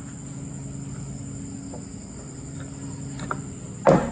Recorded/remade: recorded